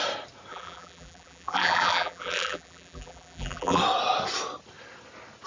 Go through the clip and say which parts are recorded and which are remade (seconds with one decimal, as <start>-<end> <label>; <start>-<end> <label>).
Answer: 0.0-0.5 recorded; 0.5-3.8 remade; 3.8-5.5 recorded